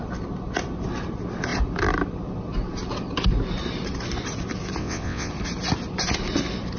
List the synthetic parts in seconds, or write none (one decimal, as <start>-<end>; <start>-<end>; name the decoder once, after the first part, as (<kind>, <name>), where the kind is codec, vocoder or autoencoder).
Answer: 4.8-5.3 (vocoder, WaveNeXt)